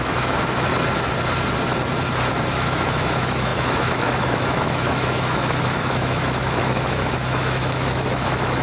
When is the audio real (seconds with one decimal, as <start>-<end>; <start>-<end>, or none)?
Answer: 0.7-2.5